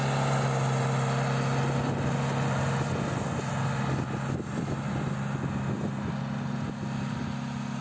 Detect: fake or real real